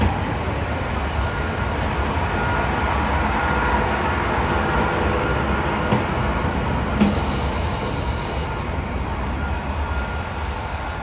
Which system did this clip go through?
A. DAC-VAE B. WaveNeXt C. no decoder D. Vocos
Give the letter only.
C